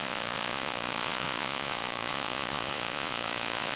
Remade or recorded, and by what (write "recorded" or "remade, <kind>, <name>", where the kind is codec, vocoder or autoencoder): remade, vocoder, Vocos